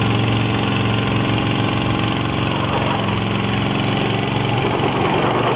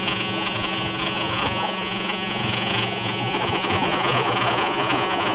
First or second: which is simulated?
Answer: second